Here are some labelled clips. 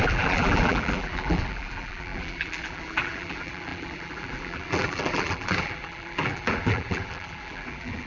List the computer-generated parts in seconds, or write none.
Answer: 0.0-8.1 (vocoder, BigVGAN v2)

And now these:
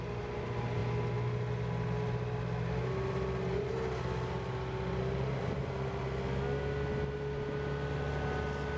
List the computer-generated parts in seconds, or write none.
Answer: 5.4-6.0 (vocoder, BigVGAN v2)

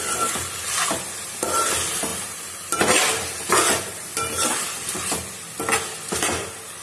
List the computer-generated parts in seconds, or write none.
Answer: 2.1-3.5 (vocoder, BigVGAN v2)

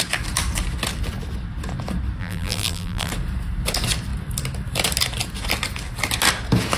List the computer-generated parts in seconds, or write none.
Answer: 2.2-3.1 (vocoder, BigVGAN v2)

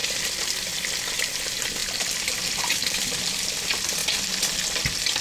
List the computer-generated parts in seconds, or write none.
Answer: 0.0-0.7 (vocoder, BigVGAN v2); 1.8-3.2; 4.0-4.8

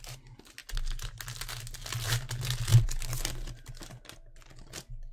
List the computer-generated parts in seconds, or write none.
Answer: 2.7-3.7 (vocoder, BigVGAN v2)

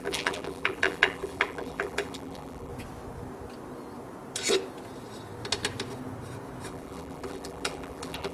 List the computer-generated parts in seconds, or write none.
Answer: 0.0-2.7 (vocoder, BigVGAN v2); 6.7-8.3